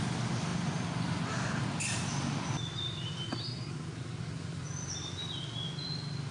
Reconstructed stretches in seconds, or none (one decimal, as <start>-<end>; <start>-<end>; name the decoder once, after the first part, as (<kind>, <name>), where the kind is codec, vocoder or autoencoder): none